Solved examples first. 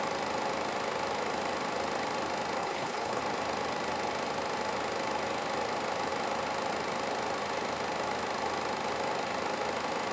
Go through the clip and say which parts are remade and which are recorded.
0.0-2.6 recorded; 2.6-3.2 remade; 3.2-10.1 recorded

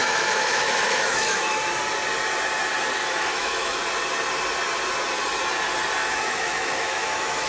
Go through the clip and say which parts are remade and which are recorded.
0.0-1.6 remade; 1.6-3.0 recorded; 3.0-3.8 remade; 3.8-6.0 recorded; 6.0-7.5 remade

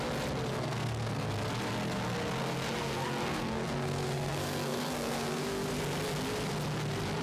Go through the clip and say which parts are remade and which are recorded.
0.0-0.5 recorded; 0.5-1.3 remade; 1.3-2.4 recorded; 2.4-5.8 remade; 5.8-7.2 recorded

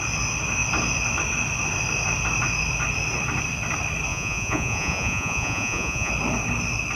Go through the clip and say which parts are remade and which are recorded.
0.0-4.1 recorded; 4.1-6.1 remade; 6.1-6.9 recorded

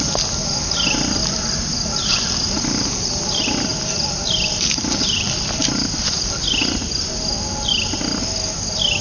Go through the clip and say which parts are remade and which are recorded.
0.0-1.2 recorded; 1.2-1.7 remade; 1.7-3.7 recorded; 3.7-4.8 remade; 4.8-5.6 recorded; 5.6-7.7 remade; 7.7-9.0 recorded

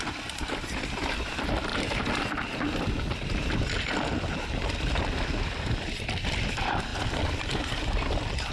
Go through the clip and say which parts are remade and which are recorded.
0.0-1.7 remade; 1.7-4.5 recorded; 4.5-6.9 remade; 6.9-8.5 recorded

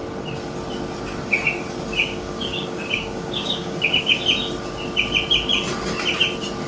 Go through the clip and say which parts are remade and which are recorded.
0.0-2.0 recorded; 2.0-4.2 remade; 4.2-6.7 recorded